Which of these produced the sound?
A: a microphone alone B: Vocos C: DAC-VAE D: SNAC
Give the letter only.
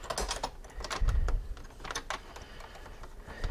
A